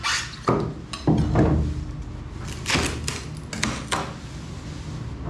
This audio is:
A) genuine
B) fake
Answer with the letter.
A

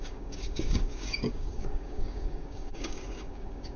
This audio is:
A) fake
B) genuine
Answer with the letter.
A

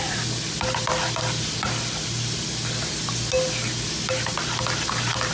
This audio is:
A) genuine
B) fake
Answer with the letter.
A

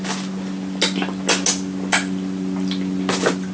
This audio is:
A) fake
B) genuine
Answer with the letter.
B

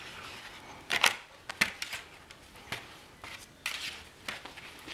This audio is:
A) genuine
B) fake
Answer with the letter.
A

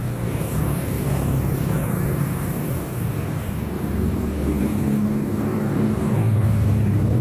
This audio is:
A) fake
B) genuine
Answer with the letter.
A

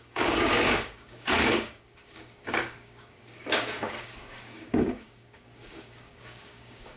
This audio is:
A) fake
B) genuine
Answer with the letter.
A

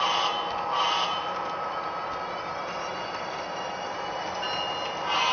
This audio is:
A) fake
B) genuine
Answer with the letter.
B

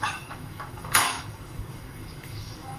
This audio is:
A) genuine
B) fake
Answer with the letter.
B